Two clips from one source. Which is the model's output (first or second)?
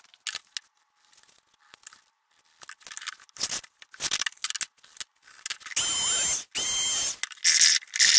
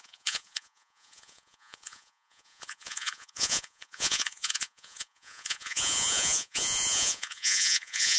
second